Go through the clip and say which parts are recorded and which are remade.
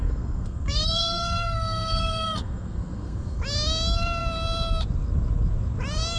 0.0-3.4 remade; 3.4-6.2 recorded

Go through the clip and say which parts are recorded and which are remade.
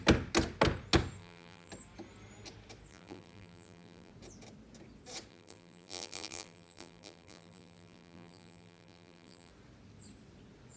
0.0-1.2 recorded; 1.2-1.7 remade; 1.7-2.9 recorded; 2.9-4.1 remade; 4.1-5.3 recorded; 5.3-9.5 remade; 9.5-10.8 recorded